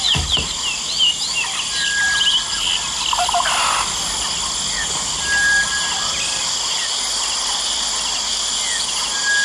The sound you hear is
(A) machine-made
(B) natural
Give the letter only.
B